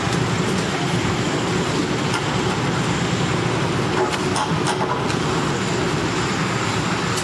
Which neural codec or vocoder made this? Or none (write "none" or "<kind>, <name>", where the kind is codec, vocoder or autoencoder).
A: none